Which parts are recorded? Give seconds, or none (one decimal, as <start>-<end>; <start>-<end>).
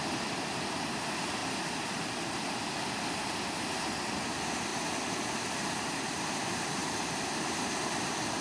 4.7-5.6